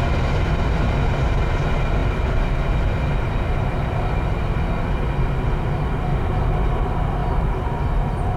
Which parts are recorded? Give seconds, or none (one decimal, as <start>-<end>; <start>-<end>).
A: 0.0-6.1; 6.8-7.2

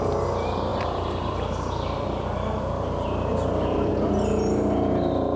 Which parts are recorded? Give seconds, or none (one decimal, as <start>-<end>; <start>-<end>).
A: 0.0-0.7; 3.9-5.4

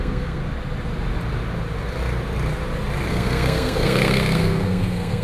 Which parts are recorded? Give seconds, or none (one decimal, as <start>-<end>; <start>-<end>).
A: 0.4-3.1